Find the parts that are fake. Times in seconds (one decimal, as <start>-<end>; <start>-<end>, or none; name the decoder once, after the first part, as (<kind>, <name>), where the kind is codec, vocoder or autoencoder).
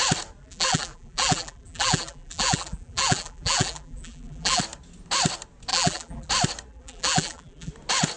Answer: 0.4-4.6 (vocoder, BigVGAN v2); 5.7-6.3; 6.7-7.7